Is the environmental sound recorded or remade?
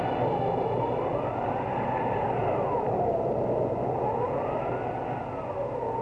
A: recorded